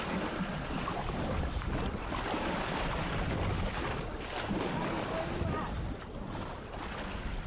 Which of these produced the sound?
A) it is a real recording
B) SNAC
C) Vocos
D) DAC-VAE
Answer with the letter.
A